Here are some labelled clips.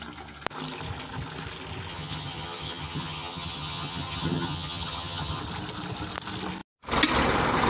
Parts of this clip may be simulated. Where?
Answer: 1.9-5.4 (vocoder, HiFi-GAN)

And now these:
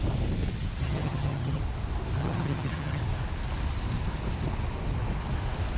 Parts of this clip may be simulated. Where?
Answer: 0.8-1.6 (vocoder, HiFi-GAN); 2.2-3.0

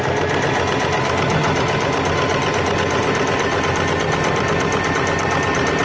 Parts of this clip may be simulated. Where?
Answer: none

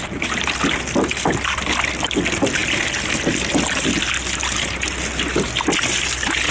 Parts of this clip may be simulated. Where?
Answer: none

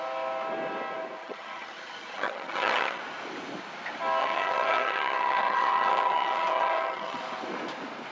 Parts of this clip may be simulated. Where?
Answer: 1.2-3.0 (vocoder, HiFi-GAN); 4.2-7.2